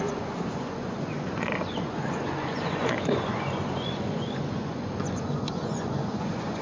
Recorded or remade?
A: remade